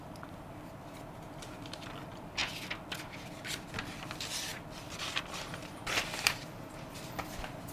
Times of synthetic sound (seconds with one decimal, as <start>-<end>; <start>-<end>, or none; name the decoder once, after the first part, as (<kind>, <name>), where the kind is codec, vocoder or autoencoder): 0.0-2.4 (vocoder, BigVGAN v2); 3.0-7.7